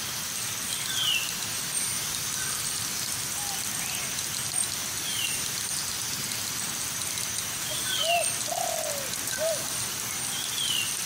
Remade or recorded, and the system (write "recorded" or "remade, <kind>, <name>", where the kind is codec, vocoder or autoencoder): recorded